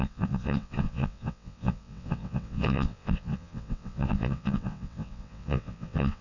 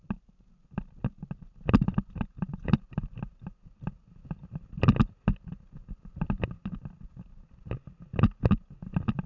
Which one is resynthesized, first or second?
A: first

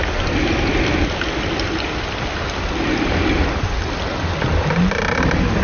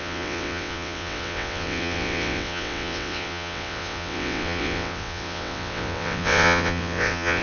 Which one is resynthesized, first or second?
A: second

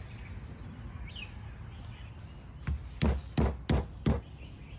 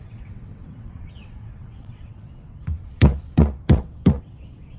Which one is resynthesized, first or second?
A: second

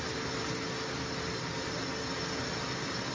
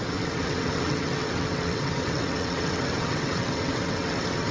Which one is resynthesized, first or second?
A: second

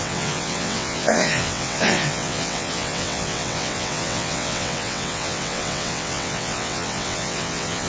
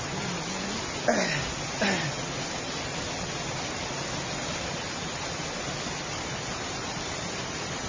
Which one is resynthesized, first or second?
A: first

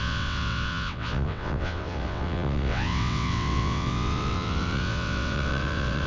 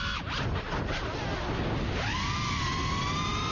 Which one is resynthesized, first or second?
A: first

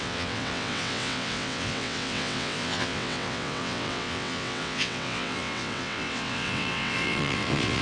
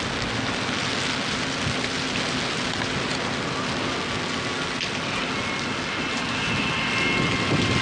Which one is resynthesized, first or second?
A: first